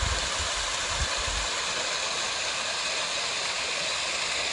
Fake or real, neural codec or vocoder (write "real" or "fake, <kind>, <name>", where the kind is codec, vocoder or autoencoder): real